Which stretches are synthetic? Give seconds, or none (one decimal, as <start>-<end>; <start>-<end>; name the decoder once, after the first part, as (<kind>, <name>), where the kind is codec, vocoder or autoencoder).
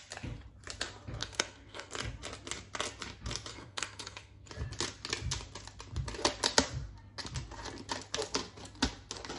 1.2-1.9 (codec, SNAC); 3.5-4.5